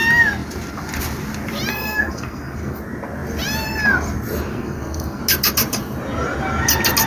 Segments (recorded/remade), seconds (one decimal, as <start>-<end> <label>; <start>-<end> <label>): 0.0-1.7 recorded; 1.7-2.8 remade; 2.8-4.5 recorded; 4.5-5.2 remade; 5.2-7.1 recorded